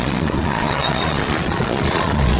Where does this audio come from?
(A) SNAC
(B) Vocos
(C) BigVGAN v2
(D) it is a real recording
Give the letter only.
B